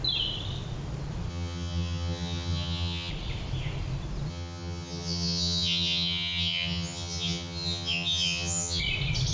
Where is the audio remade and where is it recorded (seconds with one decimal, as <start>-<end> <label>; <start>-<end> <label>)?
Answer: 0.0-1.3 recorded; 1.3-3.1 remade; 3.1-4.3 recorded; 4.3-8.8 remade; 8.8-9.3 recorded